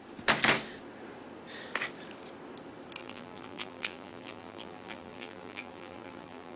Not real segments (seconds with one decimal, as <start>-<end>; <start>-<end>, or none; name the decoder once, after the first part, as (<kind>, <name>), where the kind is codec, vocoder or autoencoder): 3.0-6.6 (vocoder, BigVGAN v2)

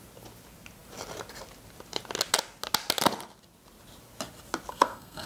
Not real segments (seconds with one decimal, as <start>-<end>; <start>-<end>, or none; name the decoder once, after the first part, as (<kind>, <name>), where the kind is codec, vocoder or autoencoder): 4.7-5.3 (codec, SNAC)